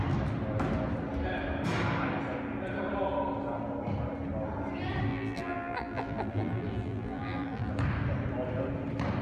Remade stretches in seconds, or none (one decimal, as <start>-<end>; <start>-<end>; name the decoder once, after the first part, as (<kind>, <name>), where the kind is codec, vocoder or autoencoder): 5.1-7.7 (vocoder, BigVGAN v2)